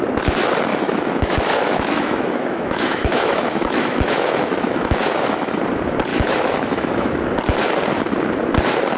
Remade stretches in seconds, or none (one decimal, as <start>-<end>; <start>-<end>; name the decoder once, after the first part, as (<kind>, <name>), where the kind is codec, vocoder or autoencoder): 0.7-5.6 (autoencoder, DAC-VAE); 6.1-7.2